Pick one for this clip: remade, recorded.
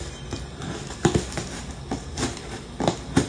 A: recorded